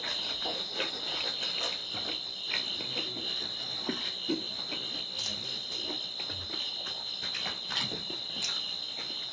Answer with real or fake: real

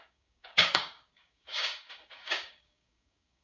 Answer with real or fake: fake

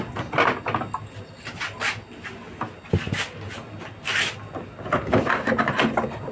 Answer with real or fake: real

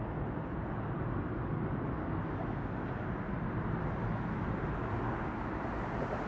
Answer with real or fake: real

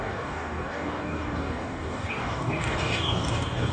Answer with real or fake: fake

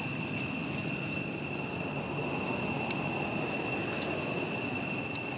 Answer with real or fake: real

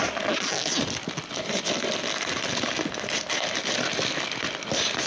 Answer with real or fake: real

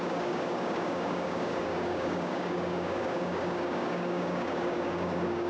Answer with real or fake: fake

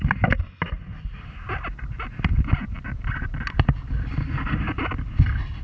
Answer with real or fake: real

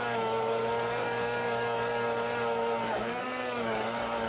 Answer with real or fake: fake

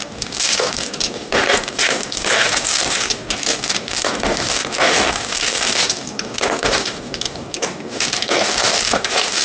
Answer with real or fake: fake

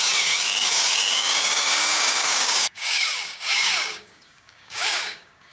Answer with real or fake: fake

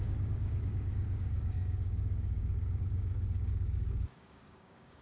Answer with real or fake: fake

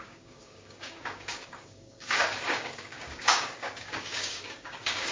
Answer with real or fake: fake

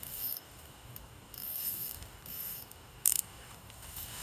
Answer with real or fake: fake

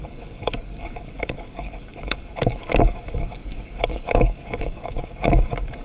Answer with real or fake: fake